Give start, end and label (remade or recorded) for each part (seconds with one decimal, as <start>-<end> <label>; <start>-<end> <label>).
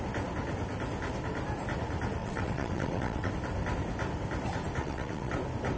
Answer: 0.0-2.2 recorded; 2.2-3.3 remade; 3.3-4.8 recorded; 4.8-5.3 remade; 5.3-5.8 recorded